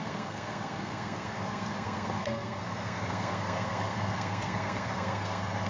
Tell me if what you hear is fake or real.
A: fake